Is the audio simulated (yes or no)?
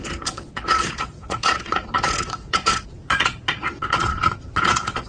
yes